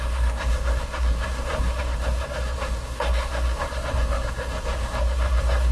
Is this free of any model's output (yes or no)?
no